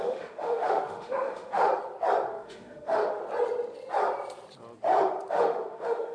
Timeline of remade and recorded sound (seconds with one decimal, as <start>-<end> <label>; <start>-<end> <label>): 0.0-1.7 remade; 1.7-2.3 recorded; 2.3-3.2 remade; 3.2-5.3 recorded; 5.3-6.1 remade